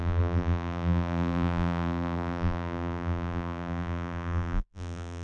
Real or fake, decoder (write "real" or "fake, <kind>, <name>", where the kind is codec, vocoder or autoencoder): fake, vocoder, BigVGAN v2